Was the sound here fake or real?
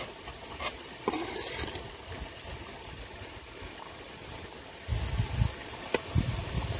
real